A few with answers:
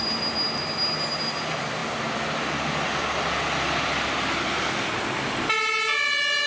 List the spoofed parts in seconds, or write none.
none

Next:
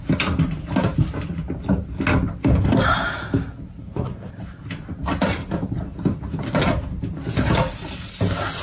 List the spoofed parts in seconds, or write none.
3.8-4.3 (codec, SNAC)

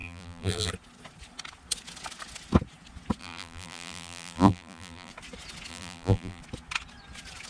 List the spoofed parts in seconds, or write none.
0.0-0.7 (vocoder, BigVGAN v2); 3.2-5.1; 5.7-6.4

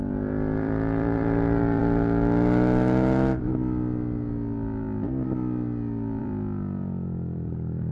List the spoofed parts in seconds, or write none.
0.0-1.8 (vocoder, BigVGAN v2); 6.2-7.9

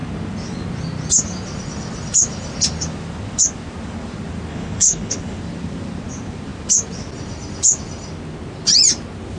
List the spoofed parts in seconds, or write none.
4.5-5.4 (codec, HILCodec)